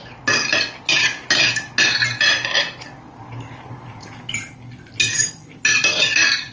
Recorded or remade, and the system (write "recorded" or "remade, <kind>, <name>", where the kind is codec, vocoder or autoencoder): recorded